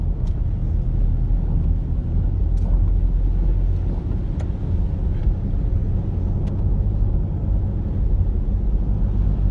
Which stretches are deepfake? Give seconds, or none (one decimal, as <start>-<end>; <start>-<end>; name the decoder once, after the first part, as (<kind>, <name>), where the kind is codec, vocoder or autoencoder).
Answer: none